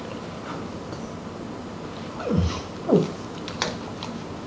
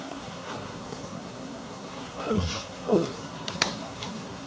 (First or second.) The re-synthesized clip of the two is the second